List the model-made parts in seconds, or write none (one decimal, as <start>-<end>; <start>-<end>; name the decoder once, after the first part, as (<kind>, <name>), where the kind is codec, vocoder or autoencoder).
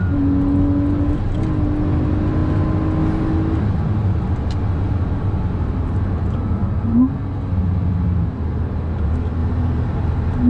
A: none